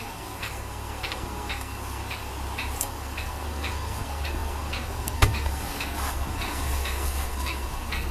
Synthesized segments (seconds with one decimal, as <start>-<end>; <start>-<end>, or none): 0.0-2.3; 2.8-8.1